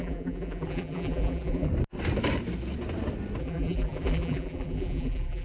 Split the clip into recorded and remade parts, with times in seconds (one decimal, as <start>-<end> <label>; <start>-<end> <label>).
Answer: 0.0-1.7 remade; 1.7-3.4 recorded; 3.4-5.4 remade